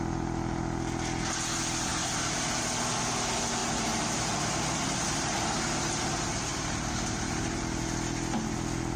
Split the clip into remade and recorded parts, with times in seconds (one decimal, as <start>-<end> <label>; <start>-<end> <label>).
0.0-1.9 recorded; 1.9-2.6 remade; 2.6-3.6 recorded; 3.6-6.1 remade; 6.1-6.5 recorded; 6.5-7.6 remade; 7.6-9.0 recorded